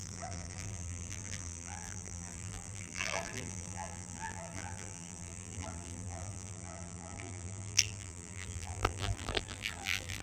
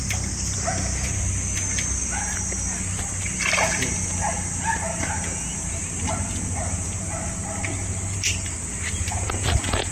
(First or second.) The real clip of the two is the second